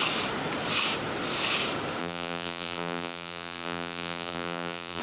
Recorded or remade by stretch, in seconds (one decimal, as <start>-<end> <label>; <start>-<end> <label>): 0.0-2.0 recorded; 2.0-5.0 remade

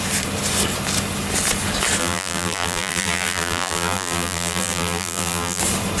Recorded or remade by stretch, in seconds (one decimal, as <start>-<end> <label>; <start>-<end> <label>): 0.0-2.0 recorded; 2.0-5.6 remade; 5.6-6.0 recorded

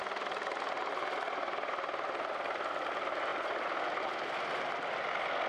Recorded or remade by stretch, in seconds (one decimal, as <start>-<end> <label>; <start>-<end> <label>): 0.0-5.5 recorded

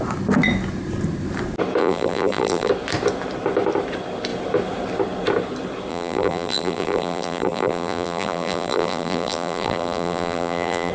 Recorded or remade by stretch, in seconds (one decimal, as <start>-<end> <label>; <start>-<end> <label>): 0.0-1.8 recorded; 1.8-2.7 remade; 2.7-5.9 recorded; 5.9-10.9 remade